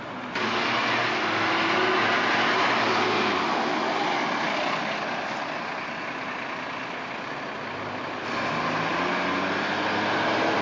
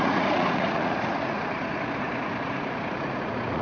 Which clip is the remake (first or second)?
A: second